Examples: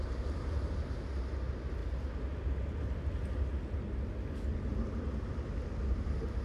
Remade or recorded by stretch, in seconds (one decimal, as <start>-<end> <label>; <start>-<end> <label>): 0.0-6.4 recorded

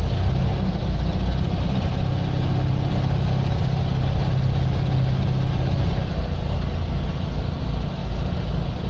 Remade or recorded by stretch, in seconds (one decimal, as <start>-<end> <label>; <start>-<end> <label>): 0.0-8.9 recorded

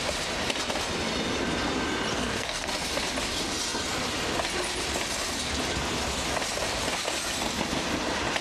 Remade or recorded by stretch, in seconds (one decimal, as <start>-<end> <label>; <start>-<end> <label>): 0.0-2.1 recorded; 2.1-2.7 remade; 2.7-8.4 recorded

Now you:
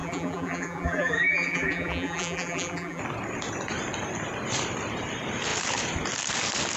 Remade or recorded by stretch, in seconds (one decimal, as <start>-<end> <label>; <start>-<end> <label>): 0.0-3.0 remade; 3.0-6.8 recorded

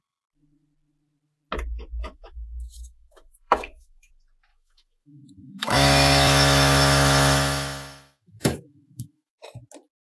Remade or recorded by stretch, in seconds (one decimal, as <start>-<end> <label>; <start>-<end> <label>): 0.0-2.0 recorded; 2.0-4.1 remade; 4.1-4.5 recorded; 4.5-9.4 remade; 9.4-10.1 recorded

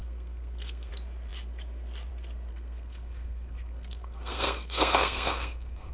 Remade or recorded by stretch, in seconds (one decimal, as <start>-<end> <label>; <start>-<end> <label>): 0.0-0.9 remade; 0.9-2.5 recorded; 2.5-5.9 remade